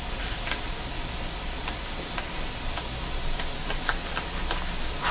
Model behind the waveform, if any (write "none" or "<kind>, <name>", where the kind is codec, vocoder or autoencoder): none